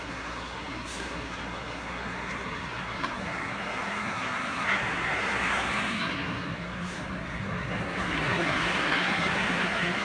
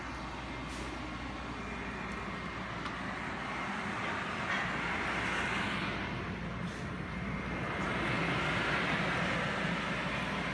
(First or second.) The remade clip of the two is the first